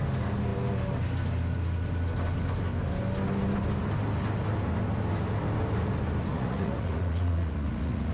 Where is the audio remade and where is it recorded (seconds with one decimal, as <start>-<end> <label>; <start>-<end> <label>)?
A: 0.0-6.3 recorded; 6.3-8.1 remade